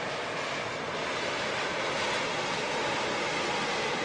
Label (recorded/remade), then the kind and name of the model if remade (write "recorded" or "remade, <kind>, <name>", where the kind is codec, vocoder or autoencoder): recorded